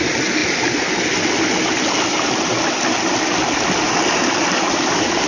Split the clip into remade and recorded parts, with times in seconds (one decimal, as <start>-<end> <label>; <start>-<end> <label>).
0.0-5.3 recorded